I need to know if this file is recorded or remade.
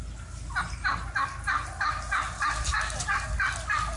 recorded